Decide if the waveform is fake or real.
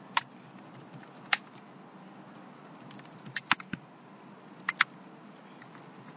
real